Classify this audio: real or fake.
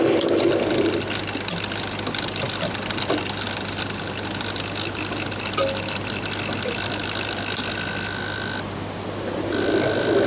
real